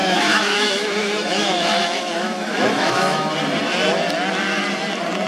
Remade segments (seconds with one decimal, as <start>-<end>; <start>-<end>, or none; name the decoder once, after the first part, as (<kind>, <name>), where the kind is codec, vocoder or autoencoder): 0.0-3.2 (autoencoder, DAC-VAE)